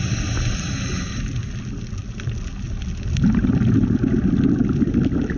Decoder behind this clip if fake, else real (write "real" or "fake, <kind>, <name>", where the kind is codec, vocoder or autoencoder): real